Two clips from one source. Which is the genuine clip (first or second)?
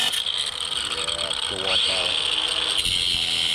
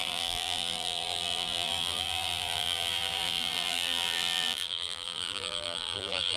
first